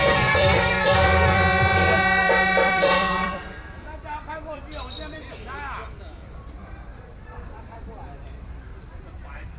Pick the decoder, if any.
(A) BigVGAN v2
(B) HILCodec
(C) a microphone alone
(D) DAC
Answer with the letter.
A